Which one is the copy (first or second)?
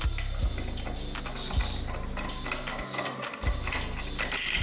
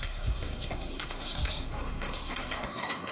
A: second